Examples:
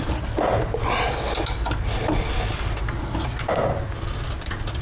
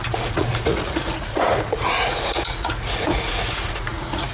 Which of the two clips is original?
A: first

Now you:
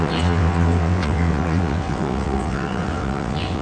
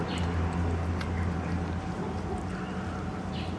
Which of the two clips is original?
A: second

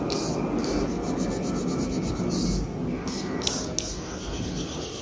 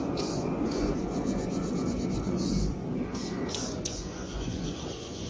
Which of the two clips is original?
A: first